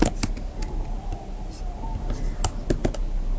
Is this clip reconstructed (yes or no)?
no